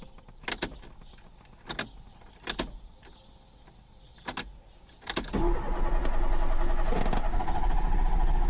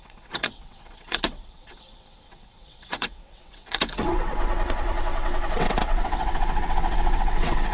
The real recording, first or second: first